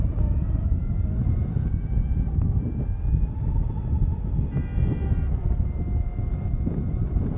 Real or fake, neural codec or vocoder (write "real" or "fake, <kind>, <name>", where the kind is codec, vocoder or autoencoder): real